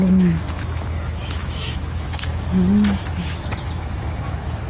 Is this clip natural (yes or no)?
no